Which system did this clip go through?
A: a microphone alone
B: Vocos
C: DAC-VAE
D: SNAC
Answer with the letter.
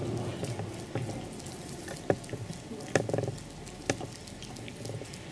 A